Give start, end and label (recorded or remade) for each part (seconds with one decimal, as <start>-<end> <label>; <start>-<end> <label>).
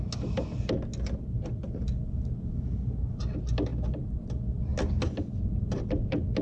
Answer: 0.0-3.7 recorded; 3.7-4.2 remade; 4.2-6.4 recorded